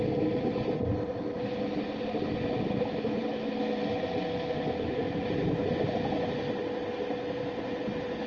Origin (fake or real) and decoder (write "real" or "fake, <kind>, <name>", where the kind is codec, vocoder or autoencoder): real